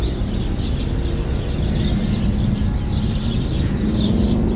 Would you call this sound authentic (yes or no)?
yes